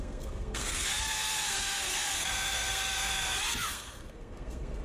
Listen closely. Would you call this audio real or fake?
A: fake